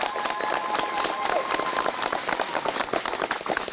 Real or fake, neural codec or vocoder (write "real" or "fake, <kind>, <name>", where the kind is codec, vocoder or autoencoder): real